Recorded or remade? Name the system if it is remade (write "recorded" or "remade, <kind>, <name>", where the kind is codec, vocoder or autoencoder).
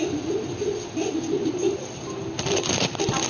recorded